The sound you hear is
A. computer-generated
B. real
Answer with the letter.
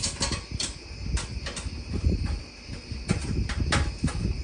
B